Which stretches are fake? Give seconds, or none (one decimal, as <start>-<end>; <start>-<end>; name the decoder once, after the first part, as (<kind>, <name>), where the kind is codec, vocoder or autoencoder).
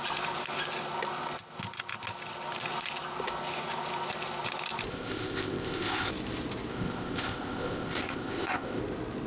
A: 4.9-6.1 (codec, ZipCodec); 6.7-8.8